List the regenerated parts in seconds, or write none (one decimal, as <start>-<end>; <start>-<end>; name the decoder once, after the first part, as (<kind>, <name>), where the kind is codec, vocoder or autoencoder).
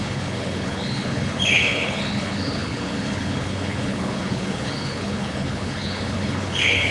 0.0-6.9 (codec, HILCodec)